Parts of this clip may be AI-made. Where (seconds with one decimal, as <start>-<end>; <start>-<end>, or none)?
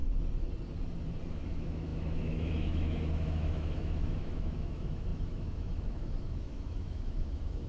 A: 1.3-7.7